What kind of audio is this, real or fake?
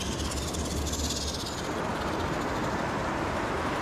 real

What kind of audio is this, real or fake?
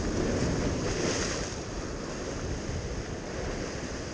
real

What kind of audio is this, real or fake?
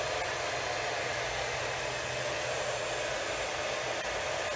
real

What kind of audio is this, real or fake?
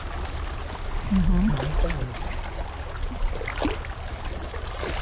real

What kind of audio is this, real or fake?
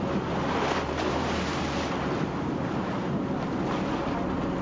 fake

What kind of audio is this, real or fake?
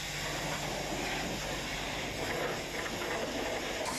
real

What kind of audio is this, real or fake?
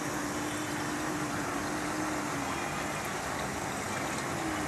real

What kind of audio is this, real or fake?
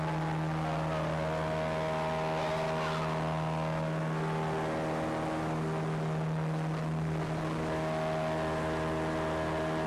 real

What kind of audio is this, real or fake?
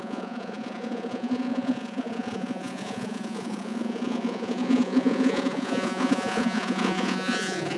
fake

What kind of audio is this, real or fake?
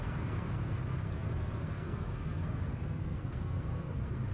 fake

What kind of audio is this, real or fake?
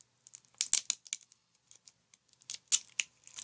real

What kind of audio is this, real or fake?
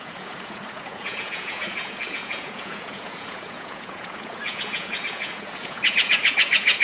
fake